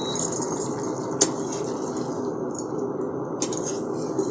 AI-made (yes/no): no